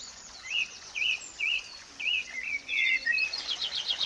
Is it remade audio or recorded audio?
remade